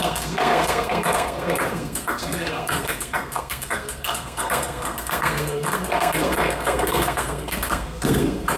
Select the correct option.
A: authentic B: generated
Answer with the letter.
B